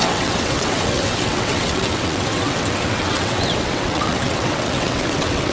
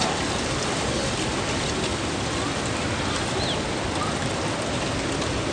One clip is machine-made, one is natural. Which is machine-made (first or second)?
first